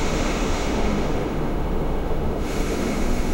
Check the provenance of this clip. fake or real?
fake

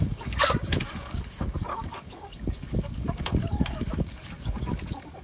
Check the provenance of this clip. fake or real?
fake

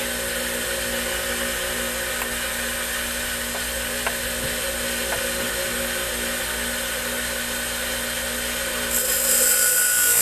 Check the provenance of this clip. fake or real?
real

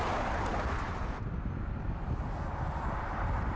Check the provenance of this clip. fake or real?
real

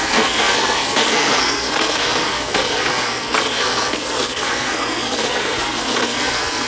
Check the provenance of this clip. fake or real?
fake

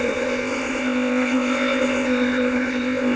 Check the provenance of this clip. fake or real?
fake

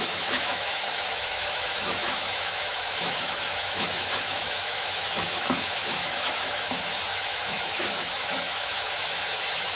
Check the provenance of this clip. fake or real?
fake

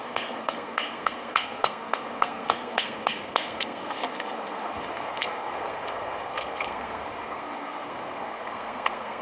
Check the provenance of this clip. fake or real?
fake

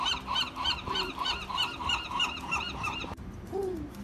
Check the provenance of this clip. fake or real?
fake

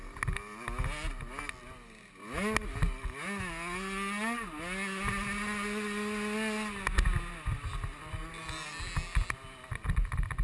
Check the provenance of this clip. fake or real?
real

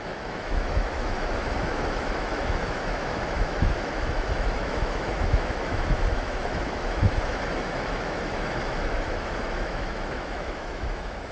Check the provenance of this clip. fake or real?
fake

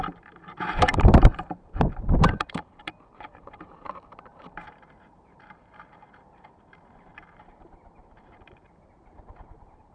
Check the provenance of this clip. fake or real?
fake